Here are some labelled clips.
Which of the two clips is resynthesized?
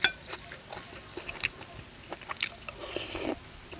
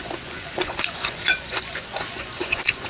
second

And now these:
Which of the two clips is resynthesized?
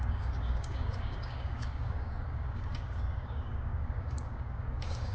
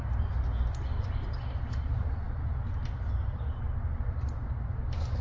first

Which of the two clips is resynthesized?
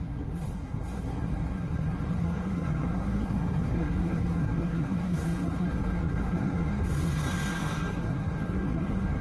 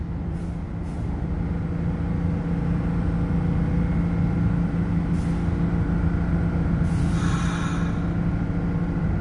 first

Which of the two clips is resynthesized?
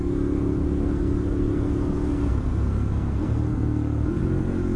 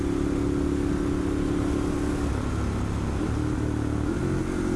first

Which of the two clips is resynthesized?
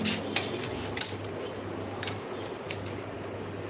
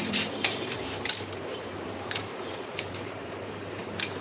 second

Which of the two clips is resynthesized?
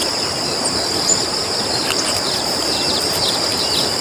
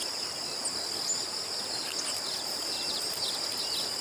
first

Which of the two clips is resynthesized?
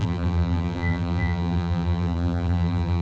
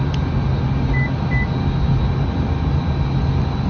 first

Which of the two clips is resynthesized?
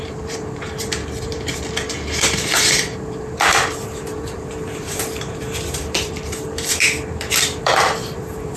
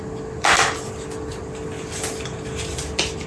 first